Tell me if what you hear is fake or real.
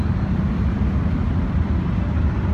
real